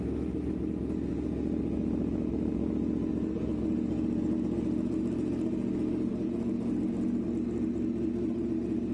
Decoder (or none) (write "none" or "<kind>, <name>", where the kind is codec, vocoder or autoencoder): none